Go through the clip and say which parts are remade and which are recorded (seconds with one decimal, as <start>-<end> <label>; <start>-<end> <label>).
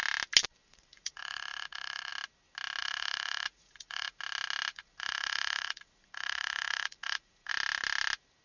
0.0-0.6 recorded; 0.6-2.1 remade; 2.1-2.8 recorded; 2.8-4.2 remade; 4.2-4.7 recorded; 4.7-7.5 remade; 7.5-8.4 recorded